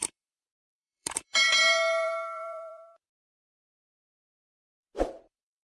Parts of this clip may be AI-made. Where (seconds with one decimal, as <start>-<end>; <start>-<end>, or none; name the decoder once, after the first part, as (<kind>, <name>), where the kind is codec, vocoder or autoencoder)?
0.0-4.2 (vocoder, BigVGAN v2); 5.2-5.8